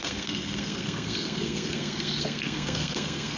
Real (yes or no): no